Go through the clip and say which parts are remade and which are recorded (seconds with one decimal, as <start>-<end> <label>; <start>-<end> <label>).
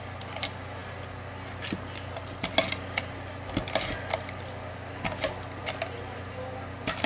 0.0-7.1 recorded